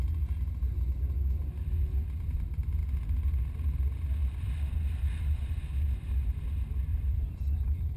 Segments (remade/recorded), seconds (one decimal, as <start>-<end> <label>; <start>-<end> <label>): 0.0-4.2 recorded; 4.2-5.6 remade; 5.6-6.9 recorded; 6.9-8.0 remade